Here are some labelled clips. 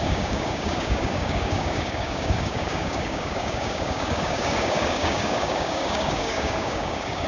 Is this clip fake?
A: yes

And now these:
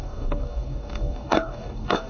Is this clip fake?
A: yes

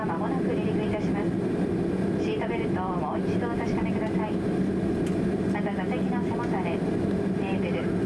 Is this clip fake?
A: no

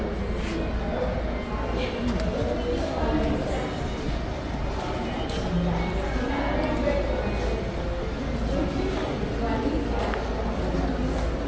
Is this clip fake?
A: no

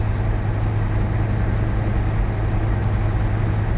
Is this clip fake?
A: no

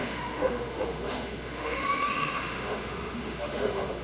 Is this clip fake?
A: yes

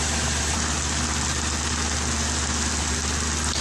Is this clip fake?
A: no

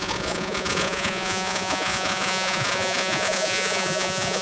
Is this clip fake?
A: yes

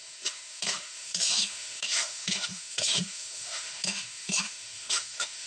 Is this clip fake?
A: yes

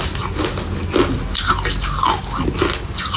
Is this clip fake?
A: no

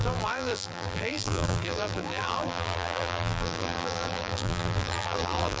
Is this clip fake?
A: yes